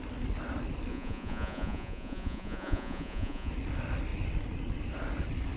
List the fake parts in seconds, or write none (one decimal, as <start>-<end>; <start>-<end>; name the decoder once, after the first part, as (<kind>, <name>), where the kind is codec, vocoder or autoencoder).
0.9-3.5 (vocoder, Vocos)